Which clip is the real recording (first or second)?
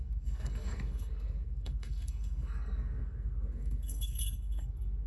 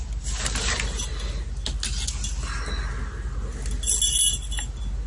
second